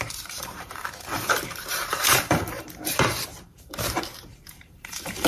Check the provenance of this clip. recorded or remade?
remade